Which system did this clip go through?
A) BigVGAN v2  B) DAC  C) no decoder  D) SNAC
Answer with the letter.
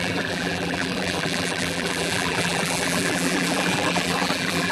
A